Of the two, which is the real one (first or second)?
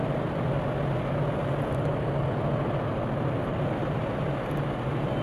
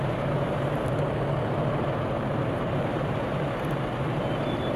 first